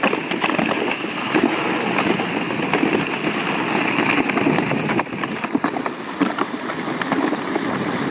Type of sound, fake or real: real